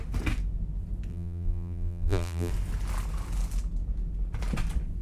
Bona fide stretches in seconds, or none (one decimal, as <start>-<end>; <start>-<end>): 0.0-1.1; 2.5-5.0